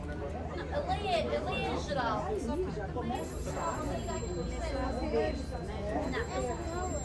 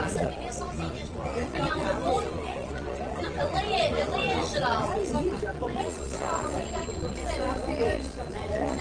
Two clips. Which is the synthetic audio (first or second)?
second